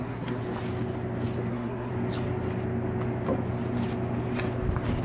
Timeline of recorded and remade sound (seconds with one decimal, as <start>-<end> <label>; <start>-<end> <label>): 0.0-0.4 remade; 0.4-1.5 recorded; 1.5-1.9 remade; 1.9-5.0 recorded